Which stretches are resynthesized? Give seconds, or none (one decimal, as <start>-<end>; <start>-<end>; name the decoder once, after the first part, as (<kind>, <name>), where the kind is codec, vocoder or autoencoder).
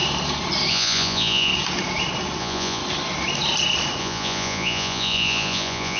0.7-1.5 (vocoder, Vocos); 2.4-2.8; 4.0-6.0